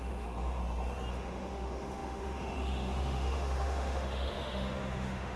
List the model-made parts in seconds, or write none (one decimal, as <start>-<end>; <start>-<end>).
0.0-0.6; 1.1-5.4